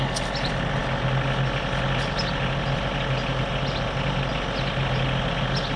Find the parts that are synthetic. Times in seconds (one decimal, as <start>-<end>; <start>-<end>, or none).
none